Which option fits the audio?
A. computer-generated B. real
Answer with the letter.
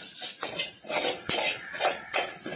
A